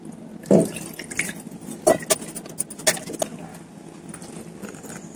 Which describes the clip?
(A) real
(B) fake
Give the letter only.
A